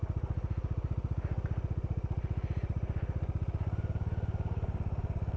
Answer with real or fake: real